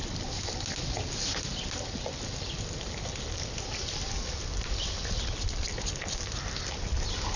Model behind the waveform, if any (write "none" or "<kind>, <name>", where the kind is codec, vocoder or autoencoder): none